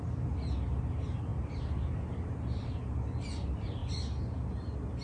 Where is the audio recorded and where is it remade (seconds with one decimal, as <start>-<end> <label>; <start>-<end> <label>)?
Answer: 0.0-1.3 recorded; 1.3-2.7 remade; 2.7-5.0 recorded